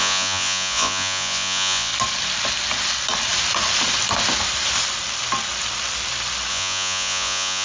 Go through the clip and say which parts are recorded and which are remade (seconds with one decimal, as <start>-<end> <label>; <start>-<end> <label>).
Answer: 0.0-1.9 remade; 1.9-6.5 recorded; 6.5-7.6 remade